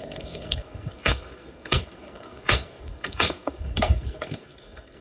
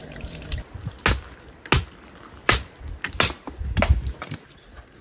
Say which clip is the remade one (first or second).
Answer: first